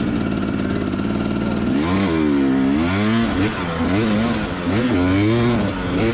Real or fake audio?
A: real